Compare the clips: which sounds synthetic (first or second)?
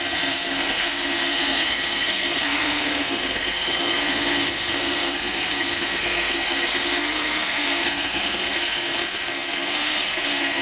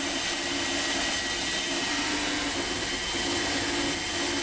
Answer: first